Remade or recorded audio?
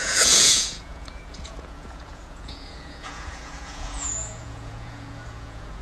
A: remade